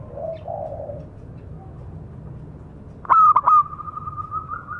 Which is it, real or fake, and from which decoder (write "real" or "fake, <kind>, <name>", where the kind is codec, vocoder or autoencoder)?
real